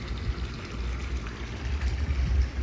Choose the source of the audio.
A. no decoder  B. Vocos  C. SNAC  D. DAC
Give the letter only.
A